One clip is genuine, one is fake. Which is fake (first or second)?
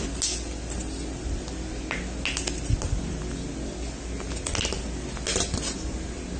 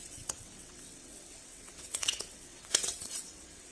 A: second